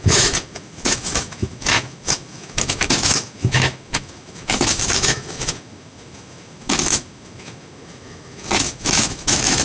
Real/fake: fake